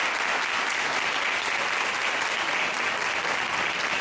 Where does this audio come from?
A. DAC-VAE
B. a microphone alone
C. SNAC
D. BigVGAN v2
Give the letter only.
B